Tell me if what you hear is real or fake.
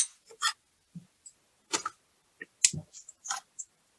real